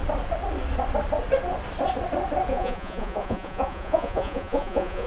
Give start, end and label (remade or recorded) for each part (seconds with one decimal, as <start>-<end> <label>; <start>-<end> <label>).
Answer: 0.0-2.5 recorded; 2.5-5.1 remade